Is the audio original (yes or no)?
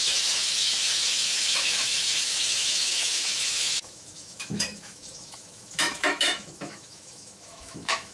no